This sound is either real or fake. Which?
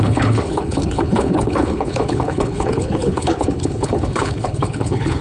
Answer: fake